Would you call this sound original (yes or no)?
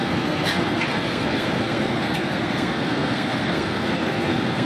no